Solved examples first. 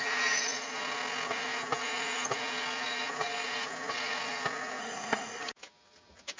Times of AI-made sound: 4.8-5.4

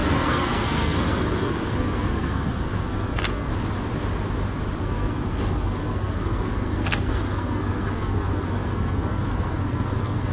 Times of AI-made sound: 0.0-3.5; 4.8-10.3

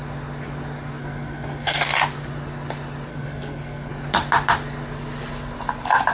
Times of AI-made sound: 1.0-1.8; 3.1-3.9

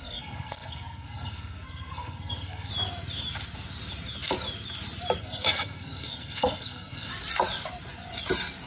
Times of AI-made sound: 0.0-2.7; 5.2-7.1

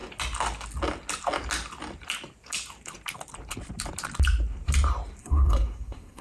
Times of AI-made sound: 5.2-6.2

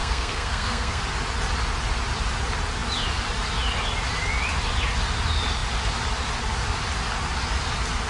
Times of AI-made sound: 0.0-1.0

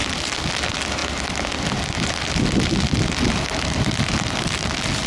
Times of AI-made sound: none